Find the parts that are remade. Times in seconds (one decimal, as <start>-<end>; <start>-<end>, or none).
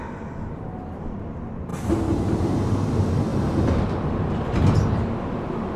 none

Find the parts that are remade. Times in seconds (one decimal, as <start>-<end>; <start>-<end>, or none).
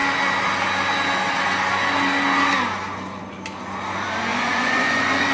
4.3-5.3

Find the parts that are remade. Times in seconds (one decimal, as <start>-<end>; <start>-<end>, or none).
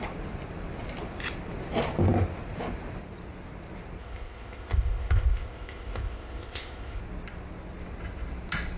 4.0-7.0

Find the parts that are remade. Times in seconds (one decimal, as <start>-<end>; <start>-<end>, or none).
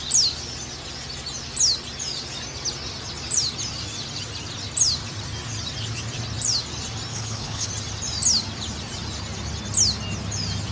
7.1-7.7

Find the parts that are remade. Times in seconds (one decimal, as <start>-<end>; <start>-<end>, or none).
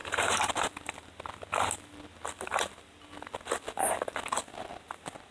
0.0-0.5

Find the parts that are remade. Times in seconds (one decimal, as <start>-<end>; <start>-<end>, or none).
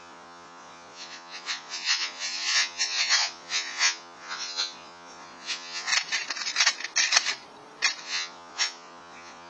0.0-5.9; 8.0-9.5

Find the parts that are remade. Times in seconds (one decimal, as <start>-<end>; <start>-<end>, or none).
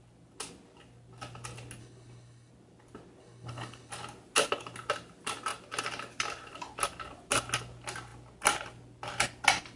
1.8-2.5; 3.2-3.9